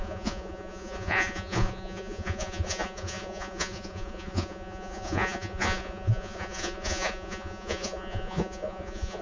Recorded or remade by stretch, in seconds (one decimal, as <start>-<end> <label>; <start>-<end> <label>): 0.0-9.2 remade